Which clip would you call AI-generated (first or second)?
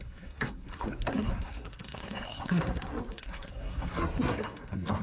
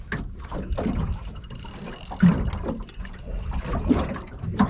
first